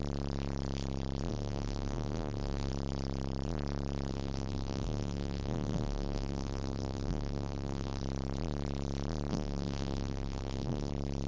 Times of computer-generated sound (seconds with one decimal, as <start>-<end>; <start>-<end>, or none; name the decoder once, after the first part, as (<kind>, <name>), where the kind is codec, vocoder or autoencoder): 1.3-2.7 (codec, SNAC); 4.1-8.0; 9.3-10.9